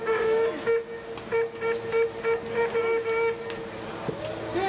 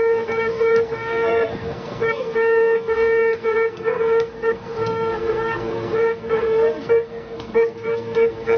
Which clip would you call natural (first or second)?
first